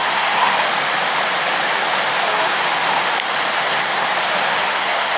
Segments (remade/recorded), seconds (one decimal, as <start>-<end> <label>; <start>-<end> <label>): 0.0-0.5 remade; 0.5-3.6 recorded; 3.6-4.1 remade; 4.1-4.7 recorded; 4.7-5.2 remade